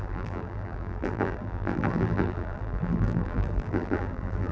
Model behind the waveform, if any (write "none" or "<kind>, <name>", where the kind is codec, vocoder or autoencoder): vocoder, BigVGAN v2